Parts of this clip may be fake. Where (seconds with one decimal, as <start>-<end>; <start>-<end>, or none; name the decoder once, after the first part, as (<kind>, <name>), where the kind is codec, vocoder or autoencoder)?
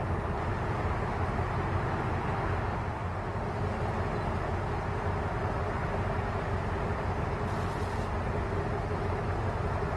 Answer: none